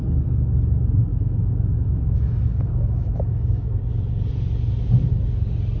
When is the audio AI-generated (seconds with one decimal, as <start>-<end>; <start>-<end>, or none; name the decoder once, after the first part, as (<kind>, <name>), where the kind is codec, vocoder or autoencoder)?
1.1-3.8 (autoencoder, DAC-VAE)